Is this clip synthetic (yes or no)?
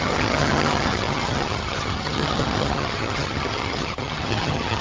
yes